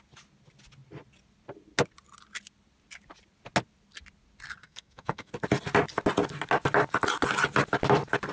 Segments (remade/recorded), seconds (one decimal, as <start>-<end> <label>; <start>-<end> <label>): 0.0-4.6 recorded; 4.6-5.3 remade; 5.3-8.3 recorded